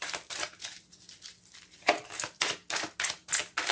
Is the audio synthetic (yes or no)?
no